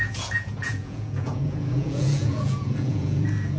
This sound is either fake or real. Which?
fake